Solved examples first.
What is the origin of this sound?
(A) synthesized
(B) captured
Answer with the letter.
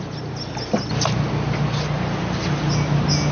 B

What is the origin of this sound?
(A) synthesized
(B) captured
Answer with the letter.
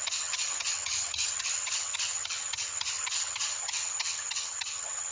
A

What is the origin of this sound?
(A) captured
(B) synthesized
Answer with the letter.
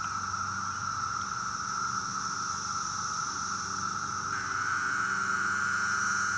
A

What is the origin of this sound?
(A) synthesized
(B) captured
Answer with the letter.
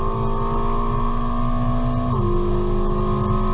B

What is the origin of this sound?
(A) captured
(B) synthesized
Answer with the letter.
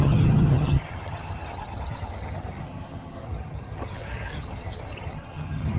B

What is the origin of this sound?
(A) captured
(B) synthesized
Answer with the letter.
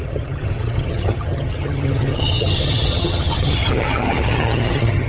B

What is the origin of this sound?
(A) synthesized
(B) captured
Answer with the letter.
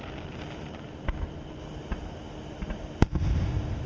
B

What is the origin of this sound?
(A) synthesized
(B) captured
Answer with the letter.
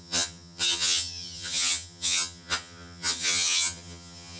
A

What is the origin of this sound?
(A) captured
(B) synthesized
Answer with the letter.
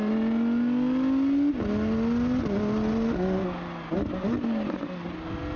A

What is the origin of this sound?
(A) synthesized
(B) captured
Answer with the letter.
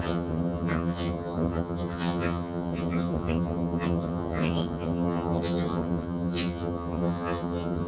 A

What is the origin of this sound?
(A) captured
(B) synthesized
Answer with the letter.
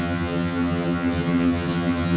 B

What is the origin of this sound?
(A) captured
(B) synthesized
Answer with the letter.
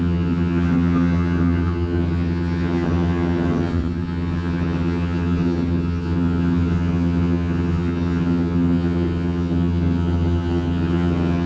B